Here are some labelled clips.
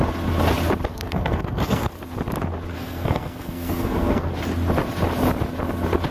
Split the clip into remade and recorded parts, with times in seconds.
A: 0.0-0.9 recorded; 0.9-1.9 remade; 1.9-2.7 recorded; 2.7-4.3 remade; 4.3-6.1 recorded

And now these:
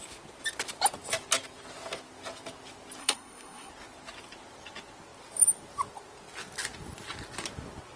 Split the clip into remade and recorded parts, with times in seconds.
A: 0.0-3.0 recorded; 3.0-3.7 remade; 3.7-8.0 recorded

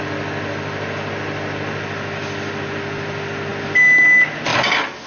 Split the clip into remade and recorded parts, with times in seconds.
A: 0.0-5.1 recorded